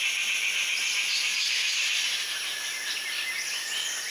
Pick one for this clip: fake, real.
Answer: real